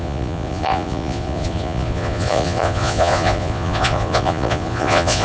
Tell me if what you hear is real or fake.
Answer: fake